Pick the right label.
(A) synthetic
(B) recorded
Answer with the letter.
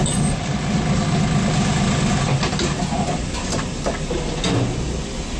B